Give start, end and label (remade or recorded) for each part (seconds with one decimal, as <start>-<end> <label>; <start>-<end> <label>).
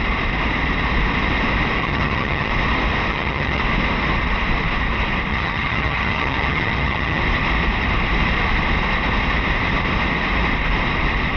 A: 0.0-1.8 recorded; 1.8-2.5 remade; 2.5-3.1 recorded; 3.1-3.6 remade; 3.6-5.3 recorded; 5.3-7.2 remade; 7.2-11.4 recorded